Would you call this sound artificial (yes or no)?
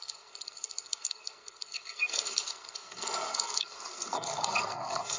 yes